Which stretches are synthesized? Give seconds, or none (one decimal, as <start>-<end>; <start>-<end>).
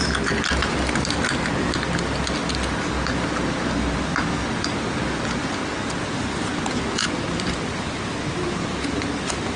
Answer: 2.4-5.6